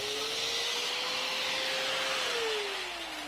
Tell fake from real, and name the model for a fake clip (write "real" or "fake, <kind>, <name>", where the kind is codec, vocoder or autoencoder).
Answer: real